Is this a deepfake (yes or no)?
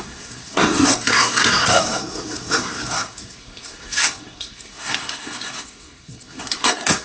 yes